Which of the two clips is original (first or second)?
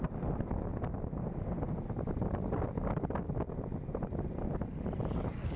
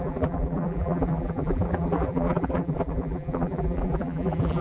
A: first